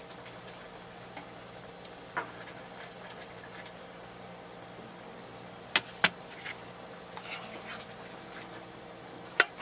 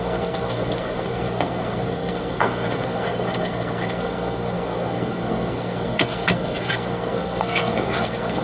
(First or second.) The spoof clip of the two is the second